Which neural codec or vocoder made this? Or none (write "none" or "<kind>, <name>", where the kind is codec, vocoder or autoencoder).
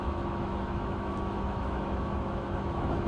autoencoder, DAC-VAE